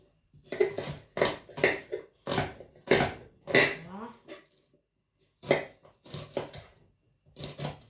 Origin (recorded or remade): recorded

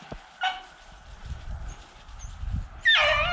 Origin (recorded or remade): recorded